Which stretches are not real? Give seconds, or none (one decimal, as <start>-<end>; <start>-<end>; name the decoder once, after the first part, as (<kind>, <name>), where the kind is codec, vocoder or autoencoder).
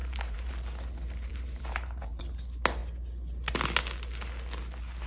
0.0-0.5 (vocoder, BigVGAN v2); 1.3-2.2